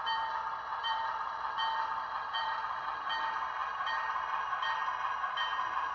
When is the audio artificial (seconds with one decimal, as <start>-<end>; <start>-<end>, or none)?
0.7-1.5; 2.4-2.9